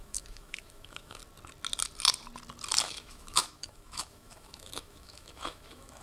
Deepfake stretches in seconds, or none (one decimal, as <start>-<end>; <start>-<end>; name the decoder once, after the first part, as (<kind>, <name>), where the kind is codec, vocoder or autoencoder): 0.0-1.2 (autoencoder, DAC-VAE); 2.8-6.0